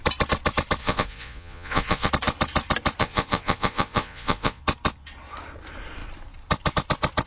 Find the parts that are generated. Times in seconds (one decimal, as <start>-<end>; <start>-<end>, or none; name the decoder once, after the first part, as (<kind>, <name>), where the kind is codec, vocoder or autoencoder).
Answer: 0.8-2.1 (vocoder, Vocos); 3.0-4.6